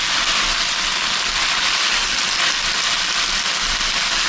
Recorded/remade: recorded